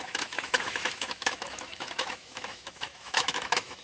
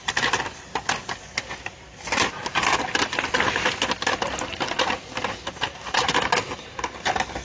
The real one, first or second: second